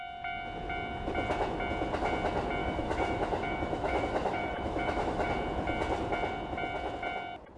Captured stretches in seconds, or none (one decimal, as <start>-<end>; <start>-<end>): 0.0-2.6; 5.3-7.6